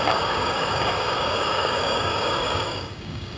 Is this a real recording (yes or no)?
no